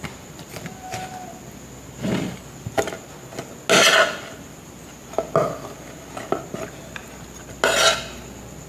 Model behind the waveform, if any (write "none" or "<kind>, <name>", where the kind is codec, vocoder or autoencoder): none